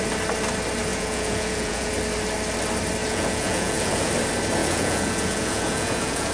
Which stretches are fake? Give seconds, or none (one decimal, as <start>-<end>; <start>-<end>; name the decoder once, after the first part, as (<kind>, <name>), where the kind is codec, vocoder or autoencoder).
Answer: 0.9-1.9 (vocoder, Vocos); 3.0-4.1; 4.6-6.3